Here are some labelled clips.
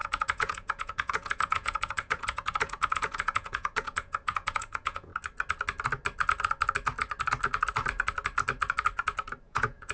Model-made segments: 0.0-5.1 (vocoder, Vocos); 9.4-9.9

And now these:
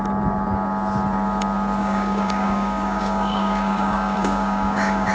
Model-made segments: 1.8-5.1 (codec, DAC)

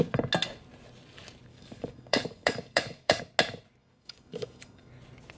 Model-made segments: 1.5-3.2 (codec, DAC); 3.8-4.9

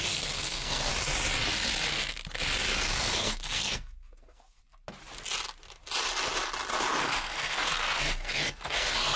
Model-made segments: 0.0-0.9 (codec, SNAC); 2.8-4.6; 7.0-9.2